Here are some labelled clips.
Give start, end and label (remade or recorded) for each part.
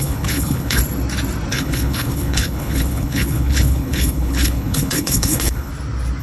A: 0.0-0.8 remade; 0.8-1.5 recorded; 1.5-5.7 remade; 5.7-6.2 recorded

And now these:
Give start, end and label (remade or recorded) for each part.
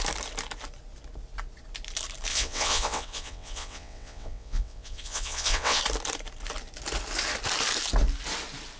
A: 0.0-2.3 recorded; 2.3-5.8 remade; 5.8-8.8 recorded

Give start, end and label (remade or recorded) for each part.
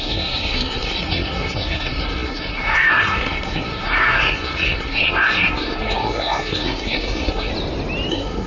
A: 0.0-7.5 remade; 7.5-8.1 recorded; 8.1-8.5 remade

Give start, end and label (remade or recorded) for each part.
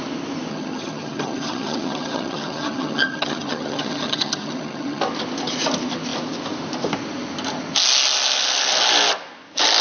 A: 0.0-0.5 recorded; 0.5-5.0 remade; 5.0-9.8 recorded